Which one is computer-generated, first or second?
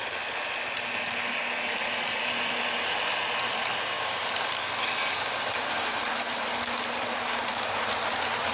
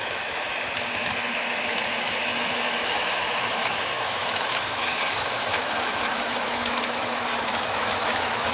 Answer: second